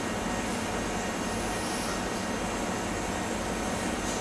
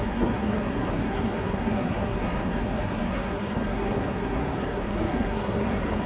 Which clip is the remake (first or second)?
second